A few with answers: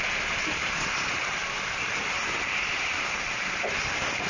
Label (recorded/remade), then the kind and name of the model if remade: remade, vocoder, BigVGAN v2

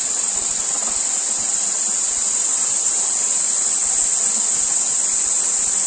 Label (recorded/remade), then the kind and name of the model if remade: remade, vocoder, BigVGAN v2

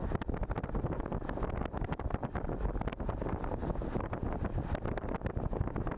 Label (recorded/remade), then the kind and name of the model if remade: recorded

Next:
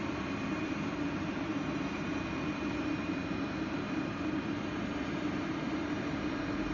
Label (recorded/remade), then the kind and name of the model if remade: remade, vocoder, BigVGAN v2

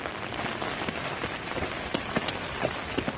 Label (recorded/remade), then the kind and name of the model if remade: remade, vocoder, BigVGAN v2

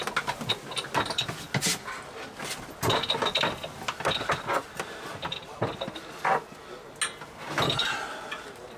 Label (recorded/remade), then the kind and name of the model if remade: recorded